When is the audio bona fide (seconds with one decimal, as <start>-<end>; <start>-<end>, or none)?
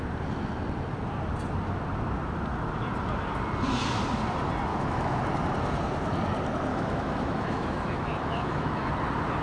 0.0-4.7; 5.2-6.7; 8.9-9.4